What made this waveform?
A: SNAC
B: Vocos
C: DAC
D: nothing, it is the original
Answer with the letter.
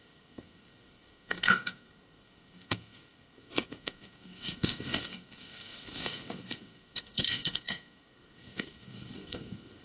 A